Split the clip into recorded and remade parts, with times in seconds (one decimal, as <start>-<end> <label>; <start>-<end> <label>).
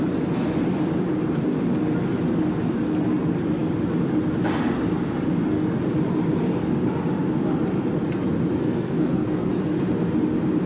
0.0-8.6 recorded; 8.6-9.5 remade; 9.5-10.7 recorded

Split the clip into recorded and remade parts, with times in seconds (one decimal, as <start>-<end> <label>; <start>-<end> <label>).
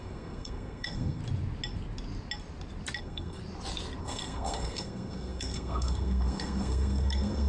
0.0-1.2 remade; 1.2-3.0 recorded; 3.0-3.4 remade; 3.4-4.0 recorded; 4.0-7.5 remade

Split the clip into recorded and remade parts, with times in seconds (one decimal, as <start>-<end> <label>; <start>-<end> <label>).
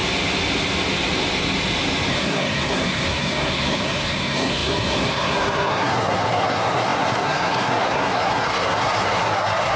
0.0-2.1 recorded; 2.1-9.8 remade